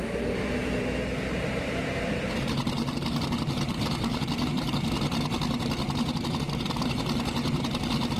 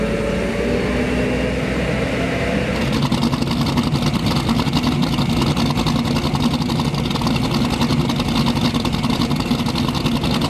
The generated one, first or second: first